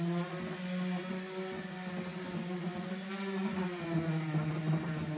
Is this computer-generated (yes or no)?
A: no